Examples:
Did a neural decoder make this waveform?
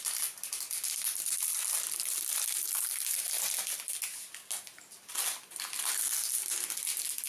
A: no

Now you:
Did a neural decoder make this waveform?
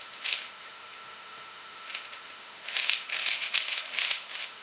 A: yes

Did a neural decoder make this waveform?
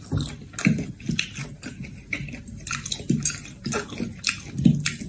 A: no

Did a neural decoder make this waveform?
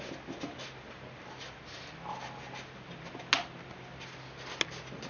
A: no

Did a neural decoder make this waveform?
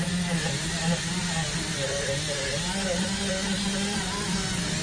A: no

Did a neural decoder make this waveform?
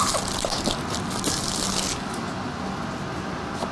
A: no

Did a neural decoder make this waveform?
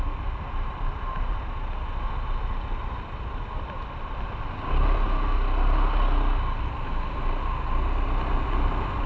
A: no